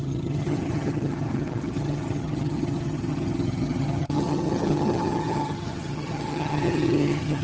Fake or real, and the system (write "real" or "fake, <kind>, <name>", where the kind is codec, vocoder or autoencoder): fake, vocoder, HiFi-GAN